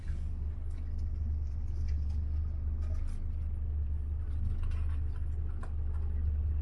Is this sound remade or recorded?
recorded